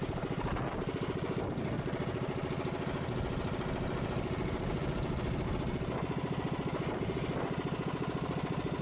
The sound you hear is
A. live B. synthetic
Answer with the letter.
A